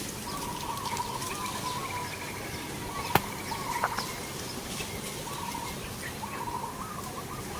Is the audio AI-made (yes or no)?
no